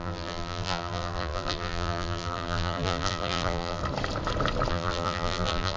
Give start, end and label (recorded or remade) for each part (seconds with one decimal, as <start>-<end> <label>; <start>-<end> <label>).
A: 0.0-3.8 remade; 3.8-4.7 recorded; 4.7-5.8 remade